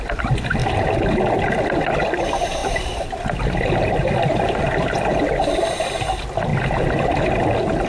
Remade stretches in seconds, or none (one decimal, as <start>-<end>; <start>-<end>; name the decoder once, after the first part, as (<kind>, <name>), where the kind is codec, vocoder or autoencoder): 0.6-2.2 (vocoder, BigVGAN v2); 2.6-4.6